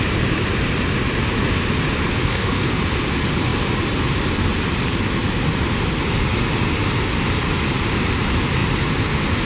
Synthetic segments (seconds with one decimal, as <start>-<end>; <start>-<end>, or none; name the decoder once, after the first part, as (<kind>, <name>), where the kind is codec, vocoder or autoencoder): 2.1-2.8 (codec, SNAC)